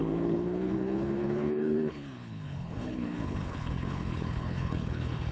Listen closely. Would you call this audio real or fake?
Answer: fake